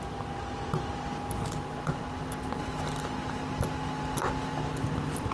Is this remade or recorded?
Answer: recorded